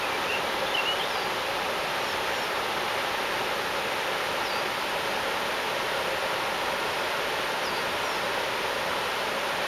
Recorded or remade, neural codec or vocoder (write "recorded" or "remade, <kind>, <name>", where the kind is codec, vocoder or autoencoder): remade, vocoder, BigVGAN v2